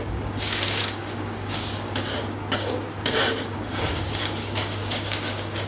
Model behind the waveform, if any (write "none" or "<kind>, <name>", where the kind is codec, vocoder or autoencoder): codec, DAC